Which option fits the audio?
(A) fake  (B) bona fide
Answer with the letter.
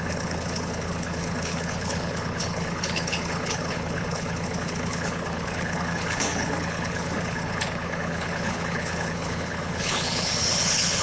A